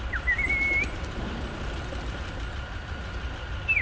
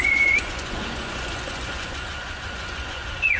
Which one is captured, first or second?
first